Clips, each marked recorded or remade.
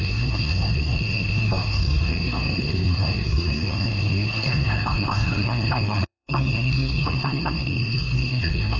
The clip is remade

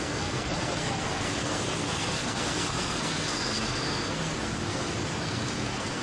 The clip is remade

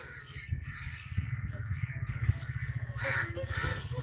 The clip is remade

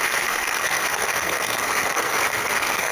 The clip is remade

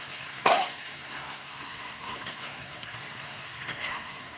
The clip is remade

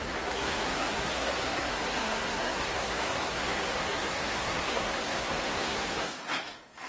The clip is remade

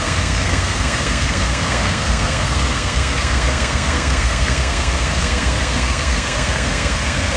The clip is remade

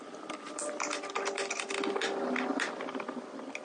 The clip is recorded